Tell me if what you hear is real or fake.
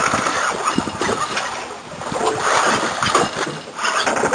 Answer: real